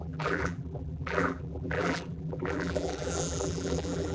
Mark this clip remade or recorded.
remade